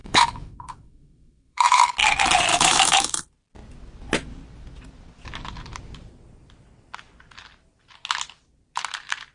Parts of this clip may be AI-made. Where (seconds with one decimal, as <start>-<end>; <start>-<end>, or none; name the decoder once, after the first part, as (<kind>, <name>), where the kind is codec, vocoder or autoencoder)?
0.0-1.9 (autoencoder, DAC-VAE); 2.5-3.2